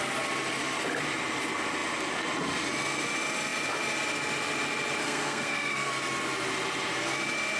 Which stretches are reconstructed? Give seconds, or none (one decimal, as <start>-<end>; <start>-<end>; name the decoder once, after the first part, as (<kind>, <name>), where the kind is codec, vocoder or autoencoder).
5.0-5.9 (codec, SNAC)